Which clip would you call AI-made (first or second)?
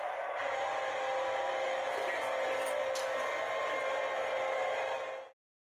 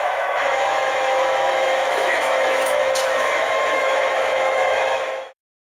second